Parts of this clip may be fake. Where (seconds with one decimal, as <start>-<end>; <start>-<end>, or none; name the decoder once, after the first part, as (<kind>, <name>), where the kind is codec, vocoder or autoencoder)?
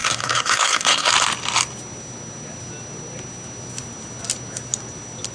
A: 0.0-1.1 (codec, SNAC)